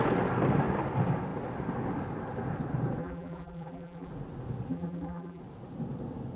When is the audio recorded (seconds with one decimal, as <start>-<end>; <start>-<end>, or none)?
0.0-3.0; 4.1-4.7; 5.4-6.4